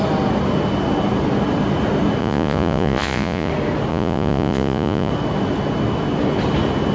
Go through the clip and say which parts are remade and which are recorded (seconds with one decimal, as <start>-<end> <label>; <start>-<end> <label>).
0.0-2.2 recorded; 2.2-3.5 remade; 3.5-3.9 recorded; 3.9-5.1 remade; 5.1-6.9 recorded